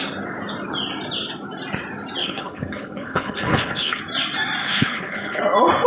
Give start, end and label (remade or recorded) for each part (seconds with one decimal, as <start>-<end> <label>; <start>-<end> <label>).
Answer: 0.0-2.2 recorded; 2.2-4.0 remade; 4.0-4.6 recorded; 4.6-5.4 remade; 5.4-5.9 recorded